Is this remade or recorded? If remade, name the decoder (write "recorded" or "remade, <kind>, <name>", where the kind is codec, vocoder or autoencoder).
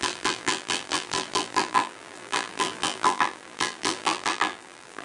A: remade, vocoder, BigVGAN v2